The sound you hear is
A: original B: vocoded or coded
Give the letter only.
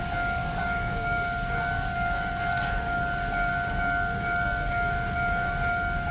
B